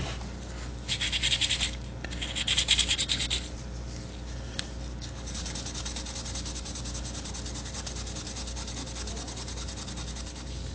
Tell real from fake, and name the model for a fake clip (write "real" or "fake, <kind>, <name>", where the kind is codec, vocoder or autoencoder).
real